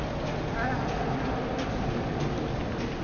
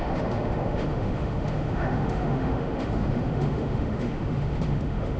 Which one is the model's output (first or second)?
second